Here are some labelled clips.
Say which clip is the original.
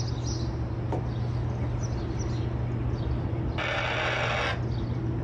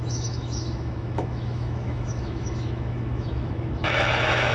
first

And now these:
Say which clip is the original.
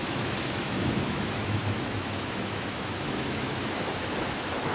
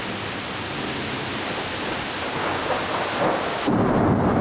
second